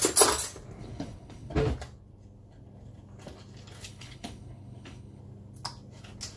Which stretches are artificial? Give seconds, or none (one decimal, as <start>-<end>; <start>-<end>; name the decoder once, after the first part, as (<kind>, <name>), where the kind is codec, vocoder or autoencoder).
0.8-1.5 (codec, HILCodec); 3.9-5.2